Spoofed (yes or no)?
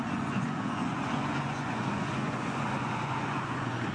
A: yes